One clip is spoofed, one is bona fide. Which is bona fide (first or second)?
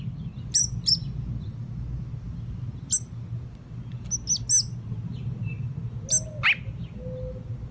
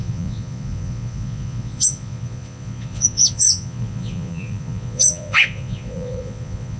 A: first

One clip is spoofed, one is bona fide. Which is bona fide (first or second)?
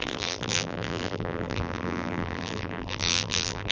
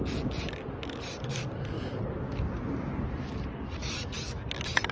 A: second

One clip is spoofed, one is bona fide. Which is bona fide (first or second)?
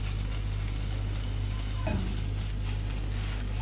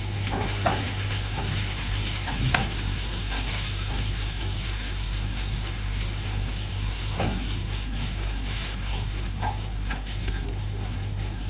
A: first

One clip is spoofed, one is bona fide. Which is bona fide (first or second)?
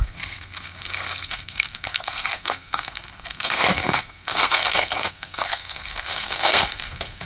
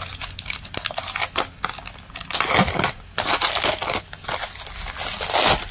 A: second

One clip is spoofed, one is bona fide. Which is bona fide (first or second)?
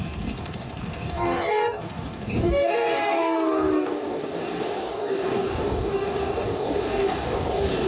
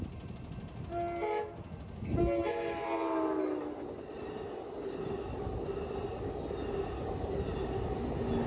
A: second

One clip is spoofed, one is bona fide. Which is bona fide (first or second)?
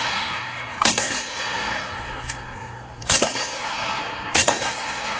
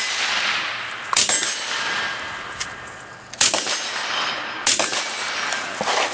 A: second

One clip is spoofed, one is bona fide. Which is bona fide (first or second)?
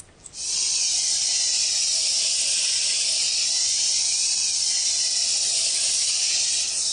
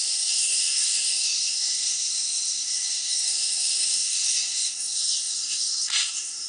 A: first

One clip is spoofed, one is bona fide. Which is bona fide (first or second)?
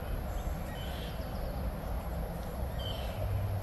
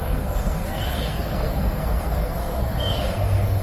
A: first